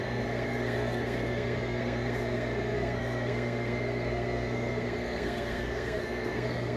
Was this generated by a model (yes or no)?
yes